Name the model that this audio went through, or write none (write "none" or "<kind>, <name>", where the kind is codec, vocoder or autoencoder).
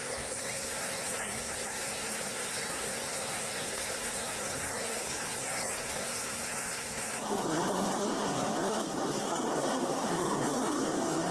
codec, SNAC